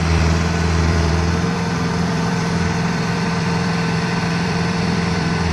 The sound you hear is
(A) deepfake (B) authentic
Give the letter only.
A